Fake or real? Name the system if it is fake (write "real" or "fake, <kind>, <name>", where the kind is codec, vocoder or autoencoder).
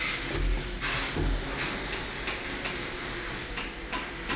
real